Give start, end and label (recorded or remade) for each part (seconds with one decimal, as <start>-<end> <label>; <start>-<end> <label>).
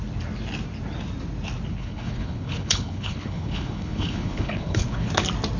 0.0-1.7 recorded; 1.7-5.1 remade; 5.1-5.6 recorded